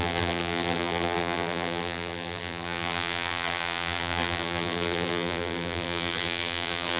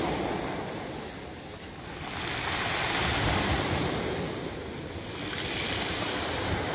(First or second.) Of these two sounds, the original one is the second